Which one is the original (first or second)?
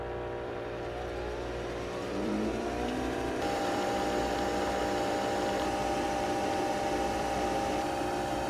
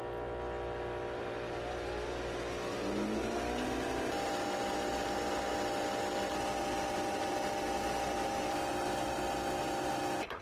second